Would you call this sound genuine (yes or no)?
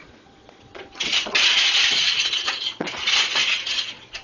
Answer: no